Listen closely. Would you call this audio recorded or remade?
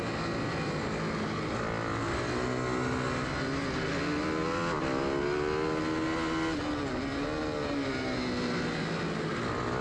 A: recorded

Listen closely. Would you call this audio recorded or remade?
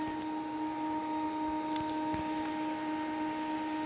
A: recorded